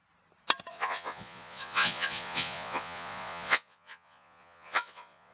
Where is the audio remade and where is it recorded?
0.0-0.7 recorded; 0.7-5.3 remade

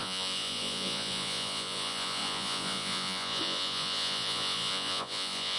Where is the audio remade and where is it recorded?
0.0-5.6 remade

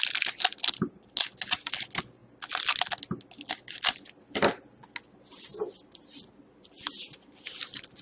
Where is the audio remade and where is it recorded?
0.0-8.0 recorded

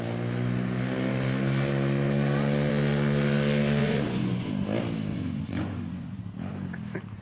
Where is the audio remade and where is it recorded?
0.0-3.8 recorded; 3.8-4.5 remade; 4.5-5.1 recorded; 5.1-6.2 remade; 6.2-7.2 recorded